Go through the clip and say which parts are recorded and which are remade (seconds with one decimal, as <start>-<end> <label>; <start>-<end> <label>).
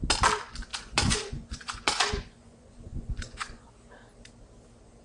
0.0-0.7 recorded; 0.7-3.7 remade; 3.7-5.0 recorded